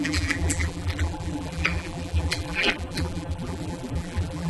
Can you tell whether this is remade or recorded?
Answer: remade